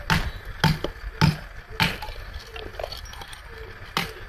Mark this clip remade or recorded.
recorded